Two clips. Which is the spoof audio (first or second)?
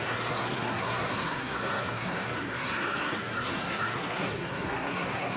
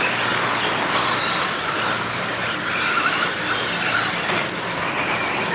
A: first